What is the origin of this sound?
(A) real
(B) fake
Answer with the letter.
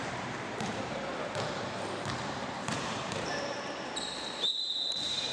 B